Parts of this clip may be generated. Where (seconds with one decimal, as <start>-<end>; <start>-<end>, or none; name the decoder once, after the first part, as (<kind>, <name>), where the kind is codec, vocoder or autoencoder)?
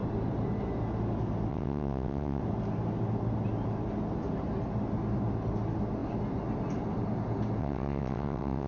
1.5-2.4 (vocoder, WaveNeXt); 7.6-8.7